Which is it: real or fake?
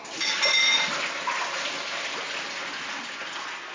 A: real